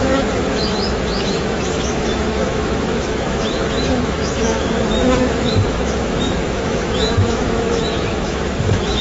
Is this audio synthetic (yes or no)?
yes